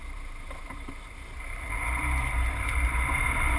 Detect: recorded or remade remade